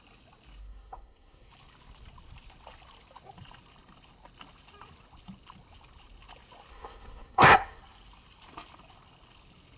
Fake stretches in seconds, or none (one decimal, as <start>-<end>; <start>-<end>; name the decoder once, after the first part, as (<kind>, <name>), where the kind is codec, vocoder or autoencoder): 0.6-1.5 (codec, SNAC); 6.7-7.8